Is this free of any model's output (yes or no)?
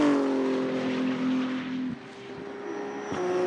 yes